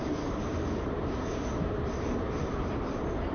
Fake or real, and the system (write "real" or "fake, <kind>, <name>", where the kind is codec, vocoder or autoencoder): fake, vocoder, BigVGAN v2